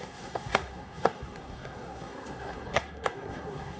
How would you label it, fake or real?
fake